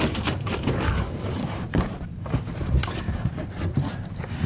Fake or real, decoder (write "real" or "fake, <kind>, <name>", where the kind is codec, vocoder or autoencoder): fake, vocoder, BigVGAN v2